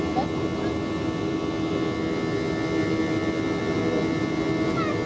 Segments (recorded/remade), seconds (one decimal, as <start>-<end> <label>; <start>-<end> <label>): 0.0-5.1 recorded